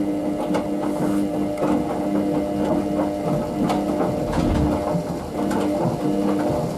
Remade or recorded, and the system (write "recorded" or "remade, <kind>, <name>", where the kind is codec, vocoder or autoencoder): recorded